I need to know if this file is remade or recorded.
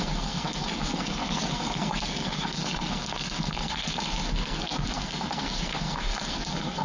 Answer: remade